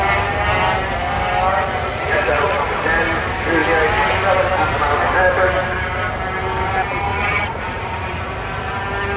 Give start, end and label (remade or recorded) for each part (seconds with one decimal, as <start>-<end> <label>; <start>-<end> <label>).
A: 0.0-1.5 recorded; 1.5-2.9 remade; 2.9-7.1 recorded; 7.1-8.3 remade; 8.3-9.2 recorded